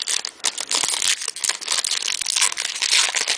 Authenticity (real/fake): real